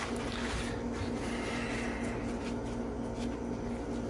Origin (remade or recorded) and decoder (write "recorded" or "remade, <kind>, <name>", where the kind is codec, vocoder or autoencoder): recorded